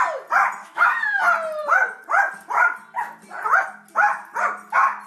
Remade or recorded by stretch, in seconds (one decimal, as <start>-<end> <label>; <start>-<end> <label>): 0.0-0.6 recorded; 0.6-1.2 remade; 1.2-5.1 recorded